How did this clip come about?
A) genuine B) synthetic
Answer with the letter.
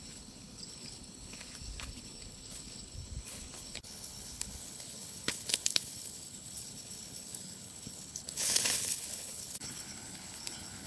B